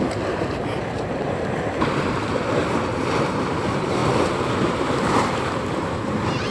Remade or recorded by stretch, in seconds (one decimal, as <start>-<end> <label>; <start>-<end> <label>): 0.0-6.5 remade